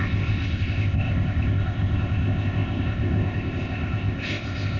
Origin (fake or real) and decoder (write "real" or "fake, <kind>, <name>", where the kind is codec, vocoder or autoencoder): fake, codec, ZipCodec